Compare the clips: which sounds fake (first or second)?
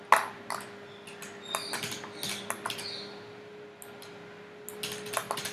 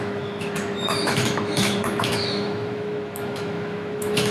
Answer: second